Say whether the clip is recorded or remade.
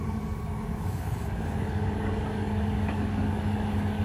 remade